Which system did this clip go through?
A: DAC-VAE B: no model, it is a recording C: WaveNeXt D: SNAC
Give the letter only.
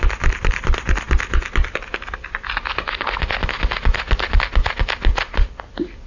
B